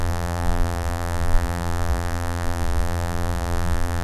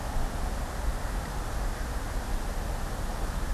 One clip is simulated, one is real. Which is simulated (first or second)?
first